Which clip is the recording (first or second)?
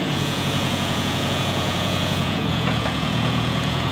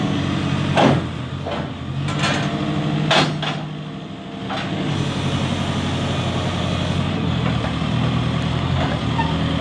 second